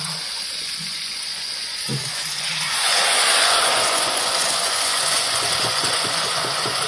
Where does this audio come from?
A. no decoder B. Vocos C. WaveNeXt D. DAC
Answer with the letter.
B